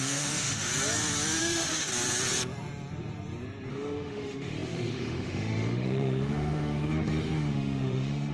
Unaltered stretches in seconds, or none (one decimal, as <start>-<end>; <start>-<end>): 0.7-1.4; 1.9-3.7